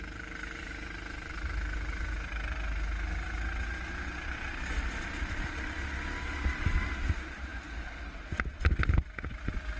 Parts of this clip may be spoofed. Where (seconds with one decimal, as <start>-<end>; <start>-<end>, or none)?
none